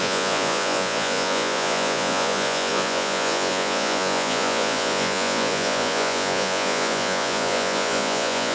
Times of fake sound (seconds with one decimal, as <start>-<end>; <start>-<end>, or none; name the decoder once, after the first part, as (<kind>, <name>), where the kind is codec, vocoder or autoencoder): 0.0-8.5 (vocoder, Vocos)

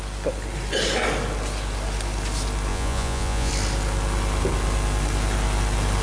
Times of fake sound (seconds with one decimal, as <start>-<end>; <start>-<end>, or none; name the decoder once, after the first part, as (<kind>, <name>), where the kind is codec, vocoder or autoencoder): 2.7-3.5 (vocoder, Vocos)

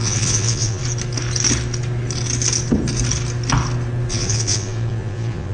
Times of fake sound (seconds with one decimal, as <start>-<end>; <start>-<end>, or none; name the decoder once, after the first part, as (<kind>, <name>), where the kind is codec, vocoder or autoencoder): 0.0-0.8 (vocoder, Vocos); 4.1-5.5

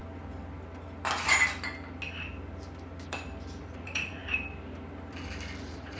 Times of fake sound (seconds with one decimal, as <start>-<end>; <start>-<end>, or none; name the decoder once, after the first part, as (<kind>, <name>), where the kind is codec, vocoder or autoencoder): 3.6-4.2 (vocoder, Vocos); 5.6-6.0

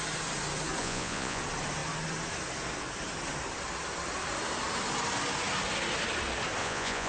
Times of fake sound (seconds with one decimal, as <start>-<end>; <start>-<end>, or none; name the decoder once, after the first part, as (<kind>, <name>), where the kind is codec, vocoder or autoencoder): 0.8-1.4 (vocoder, Vocos); 6.6-7.1